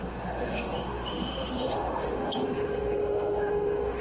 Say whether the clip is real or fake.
fake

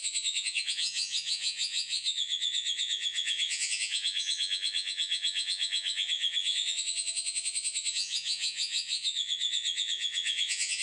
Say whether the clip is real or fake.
fake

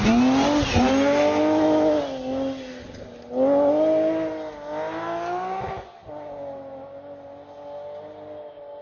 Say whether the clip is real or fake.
real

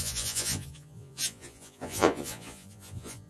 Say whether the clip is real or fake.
fake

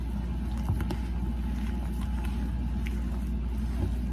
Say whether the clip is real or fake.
real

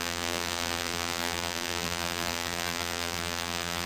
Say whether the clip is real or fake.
fake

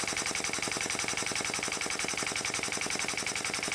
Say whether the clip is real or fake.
real